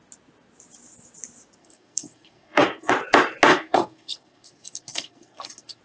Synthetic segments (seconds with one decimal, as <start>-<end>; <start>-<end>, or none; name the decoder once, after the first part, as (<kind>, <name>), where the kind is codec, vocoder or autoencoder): 1.6-2.9 (codec, SNAC); 3.5-5.8